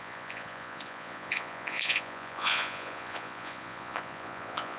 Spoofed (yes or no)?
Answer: yes